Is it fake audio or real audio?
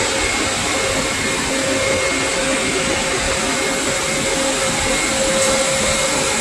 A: real